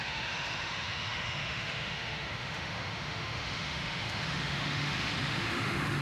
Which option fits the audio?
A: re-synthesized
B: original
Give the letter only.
A